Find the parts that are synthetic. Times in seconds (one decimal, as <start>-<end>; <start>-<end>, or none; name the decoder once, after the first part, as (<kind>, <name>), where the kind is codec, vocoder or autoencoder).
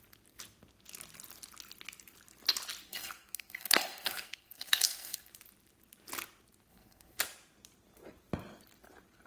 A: 2.9-5.3 (codec, SNAC); 6.7-7.2